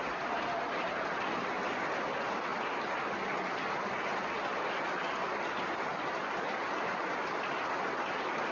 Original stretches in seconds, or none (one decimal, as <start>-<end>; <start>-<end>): 2.5-6.8